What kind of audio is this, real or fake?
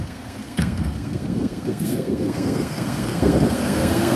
fake